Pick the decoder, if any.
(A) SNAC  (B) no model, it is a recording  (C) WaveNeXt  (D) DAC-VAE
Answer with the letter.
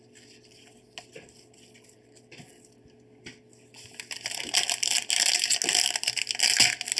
B